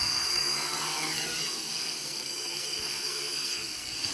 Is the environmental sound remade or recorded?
remade